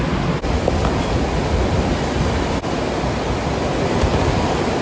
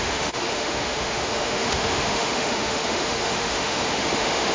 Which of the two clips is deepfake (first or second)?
second